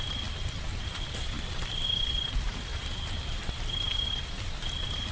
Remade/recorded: recorded